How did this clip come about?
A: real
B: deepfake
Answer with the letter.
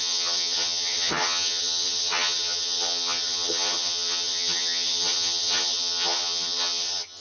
B